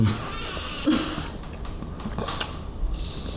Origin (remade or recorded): recorded